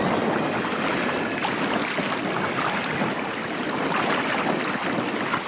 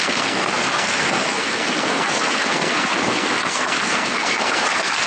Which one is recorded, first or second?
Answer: first